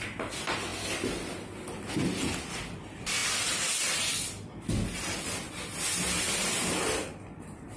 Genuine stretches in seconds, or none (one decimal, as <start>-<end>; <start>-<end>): 0.0-7.8